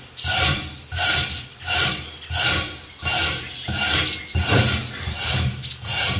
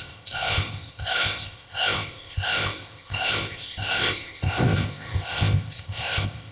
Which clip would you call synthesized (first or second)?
second